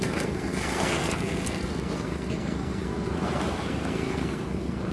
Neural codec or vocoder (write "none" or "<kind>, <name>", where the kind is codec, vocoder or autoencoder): codec, SNAC